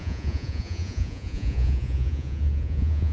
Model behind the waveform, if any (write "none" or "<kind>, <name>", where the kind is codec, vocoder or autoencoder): vocoder, Vocos